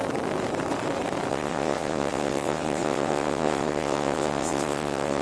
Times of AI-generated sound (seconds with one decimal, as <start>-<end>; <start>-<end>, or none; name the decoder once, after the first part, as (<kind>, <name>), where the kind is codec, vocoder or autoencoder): 1.3-5.2 (vocoder, WaveNeXt)